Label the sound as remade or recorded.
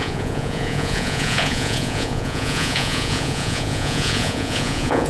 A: remade